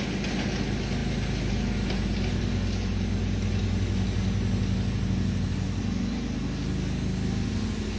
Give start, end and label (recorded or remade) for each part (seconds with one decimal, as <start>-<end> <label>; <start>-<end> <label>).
0.0-8.0 recorded